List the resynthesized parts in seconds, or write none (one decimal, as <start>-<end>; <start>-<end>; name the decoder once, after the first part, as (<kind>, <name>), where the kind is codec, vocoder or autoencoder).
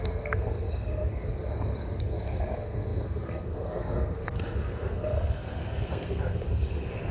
0.0-1.5 (codec, SNAC); 2.0-7.1